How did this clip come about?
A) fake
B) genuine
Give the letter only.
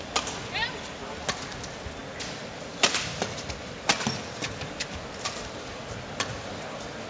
B